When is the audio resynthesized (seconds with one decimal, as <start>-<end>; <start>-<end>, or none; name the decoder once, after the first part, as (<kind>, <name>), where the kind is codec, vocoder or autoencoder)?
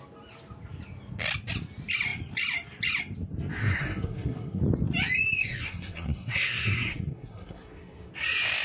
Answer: 3.6-4.6 (codec, SNAC); 5.4-8.1